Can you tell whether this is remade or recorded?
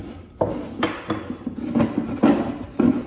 recorded